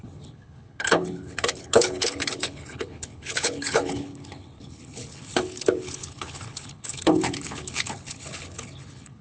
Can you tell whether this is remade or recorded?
remade